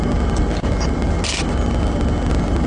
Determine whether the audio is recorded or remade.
recorded